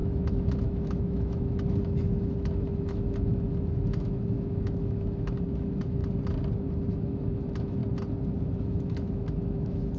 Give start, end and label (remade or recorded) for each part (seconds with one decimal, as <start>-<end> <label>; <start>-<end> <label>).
0.0-6.0 remade; 6.0-6.9 recorded; 6.9-7.8 remade; 7.8-8.4 recorded; 8.4-10.0 remade